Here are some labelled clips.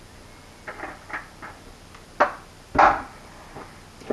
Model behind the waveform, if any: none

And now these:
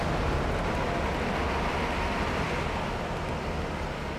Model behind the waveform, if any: none